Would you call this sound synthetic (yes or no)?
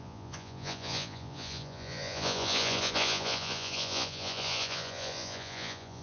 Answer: yes